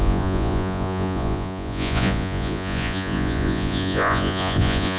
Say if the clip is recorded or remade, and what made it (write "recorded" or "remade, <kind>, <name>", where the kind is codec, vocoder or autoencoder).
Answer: remade, vocoder, Vocos